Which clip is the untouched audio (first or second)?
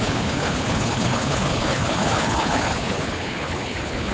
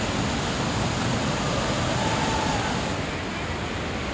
second